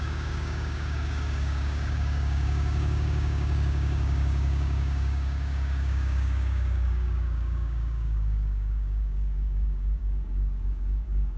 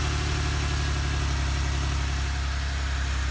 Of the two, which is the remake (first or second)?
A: first